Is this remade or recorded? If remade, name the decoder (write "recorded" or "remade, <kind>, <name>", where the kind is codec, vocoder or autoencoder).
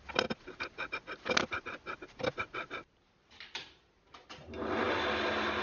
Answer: recorded